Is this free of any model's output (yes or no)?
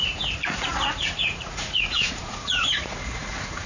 no